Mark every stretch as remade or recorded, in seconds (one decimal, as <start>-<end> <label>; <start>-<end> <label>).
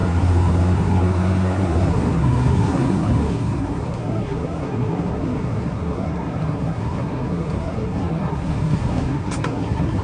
0.0-10.0 remade